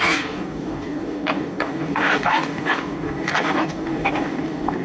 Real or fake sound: fake